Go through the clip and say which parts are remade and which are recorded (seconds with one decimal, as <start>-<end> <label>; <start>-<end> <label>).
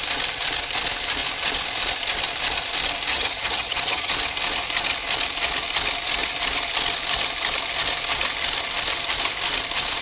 0.0-3.1 recorded; 3.1-4.1 remade; 4.1-10.0 recorded